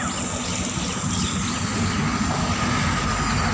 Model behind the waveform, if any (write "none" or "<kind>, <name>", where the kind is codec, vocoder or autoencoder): none